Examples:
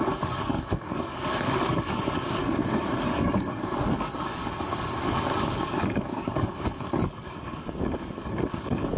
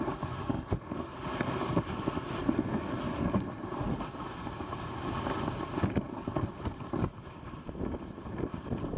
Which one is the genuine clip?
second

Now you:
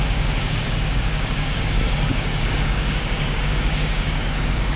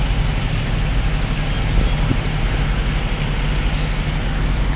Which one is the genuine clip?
second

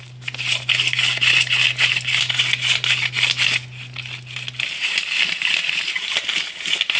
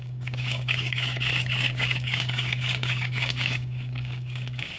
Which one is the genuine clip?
first